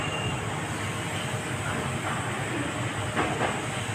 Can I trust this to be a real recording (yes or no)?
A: yes